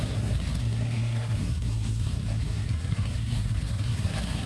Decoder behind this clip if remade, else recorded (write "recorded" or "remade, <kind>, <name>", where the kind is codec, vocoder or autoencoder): remade, codec, SNAC